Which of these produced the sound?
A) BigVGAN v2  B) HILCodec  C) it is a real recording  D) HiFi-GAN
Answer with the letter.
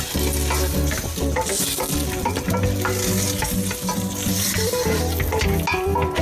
C